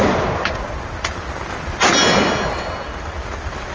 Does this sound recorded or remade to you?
recorded